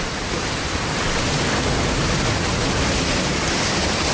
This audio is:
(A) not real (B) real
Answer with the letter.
B